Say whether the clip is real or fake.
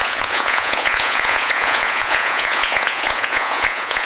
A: fake